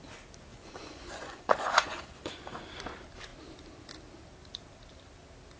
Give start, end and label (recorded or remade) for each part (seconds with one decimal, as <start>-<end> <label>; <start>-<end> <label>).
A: 0.0-0.5 recorded; 0.5-2.6 remade; 2.6-5.6 recorded